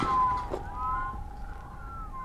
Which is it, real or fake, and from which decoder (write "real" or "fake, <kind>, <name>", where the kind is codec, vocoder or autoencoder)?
real